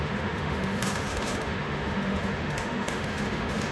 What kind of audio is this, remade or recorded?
remade